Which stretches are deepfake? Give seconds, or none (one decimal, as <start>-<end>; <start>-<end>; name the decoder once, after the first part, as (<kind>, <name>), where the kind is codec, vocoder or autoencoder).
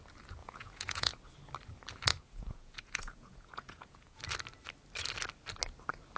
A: 0.4-1.1 (vocoder, Vocos); 2.1-4.2